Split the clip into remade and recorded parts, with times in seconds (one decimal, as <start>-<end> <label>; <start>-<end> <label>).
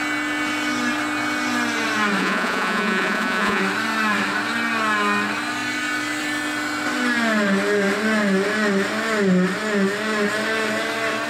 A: 0.0-2.2 recorded; 2.2-3.6 remade; 3.6-11.3 recorded